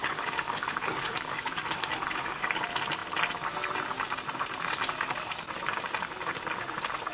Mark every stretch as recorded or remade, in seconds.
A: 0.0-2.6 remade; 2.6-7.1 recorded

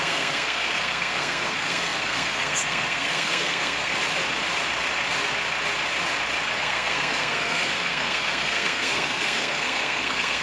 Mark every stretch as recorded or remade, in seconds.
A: 0.0-3.9 remade; 3.9-6.6 recorded; 6.6-10.4 remade